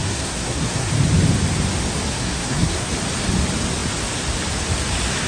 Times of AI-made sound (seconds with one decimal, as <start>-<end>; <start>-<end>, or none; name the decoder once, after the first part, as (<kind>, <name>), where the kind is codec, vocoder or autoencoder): 0.0-0.9 (codec, SNAC); 2.1-2.9